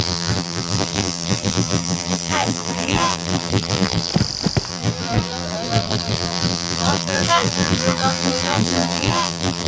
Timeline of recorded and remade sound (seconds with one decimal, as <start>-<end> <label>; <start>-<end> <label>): 0.0-4.1 remade; 4.1-4.7 recorded; 4.7-9.7 remade